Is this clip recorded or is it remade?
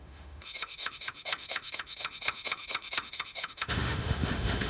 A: remade